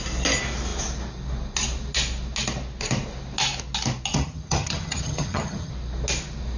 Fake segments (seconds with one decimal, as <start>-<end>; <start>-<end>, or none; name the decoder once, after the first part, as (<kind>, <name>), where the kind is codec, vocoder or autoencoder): 4.1-5.7 (vocoder, HiFi-GAN)